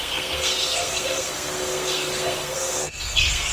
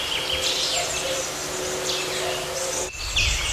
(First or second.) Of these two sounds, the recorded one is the second